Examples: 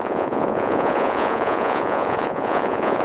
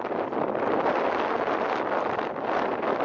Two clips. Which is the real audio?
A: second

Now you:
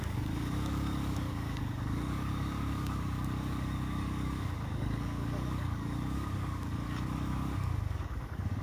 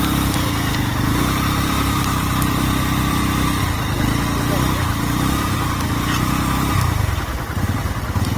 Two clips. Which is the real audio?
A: second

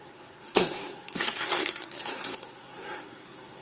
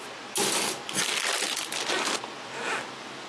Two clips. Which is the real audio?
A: second